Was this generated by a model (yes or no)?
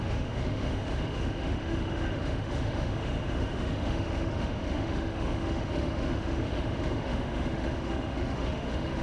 yes